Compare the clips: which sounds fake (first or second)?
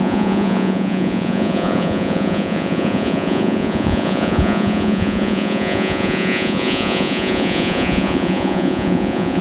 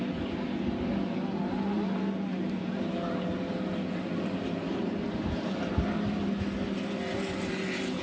first